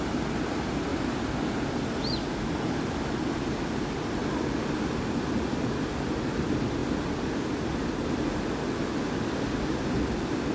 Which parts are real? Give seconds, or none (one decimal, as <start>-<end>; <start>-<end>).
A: 0.0-10.5